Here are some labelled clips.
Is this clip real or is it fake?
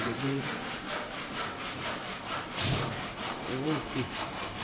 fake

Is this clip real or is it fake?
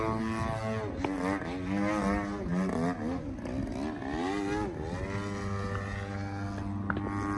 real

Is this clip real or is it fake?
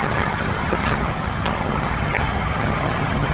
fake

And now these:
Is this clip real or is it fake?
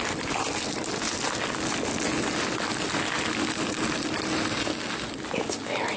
real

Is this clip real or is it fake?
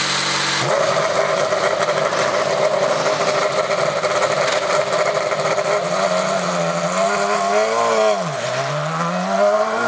real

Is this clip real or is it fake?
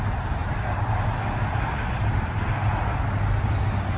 real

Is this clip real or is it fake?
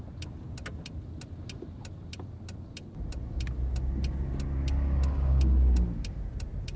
real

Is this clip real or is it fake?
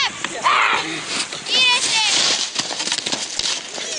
real